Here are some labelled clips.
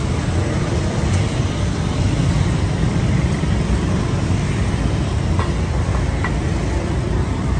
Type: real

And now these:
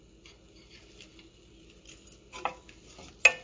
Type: real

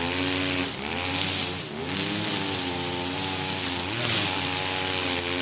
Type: real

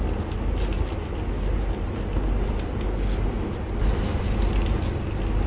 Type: real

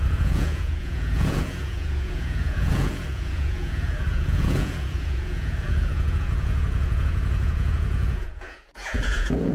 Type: fake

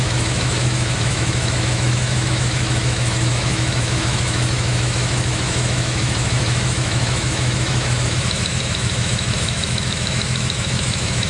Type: fake